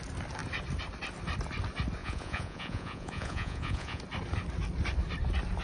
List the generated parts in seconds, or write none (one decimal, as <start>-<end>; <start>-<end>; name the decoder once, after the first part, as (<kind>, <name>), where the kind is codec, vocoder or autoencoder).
2.0-4.0 (vocoder, Vocos)